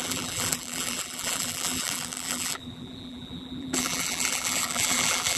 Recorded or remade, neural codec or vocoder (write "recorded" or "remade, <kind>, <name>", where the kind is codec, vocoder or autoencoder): remade, vocoder, BigVGAN v2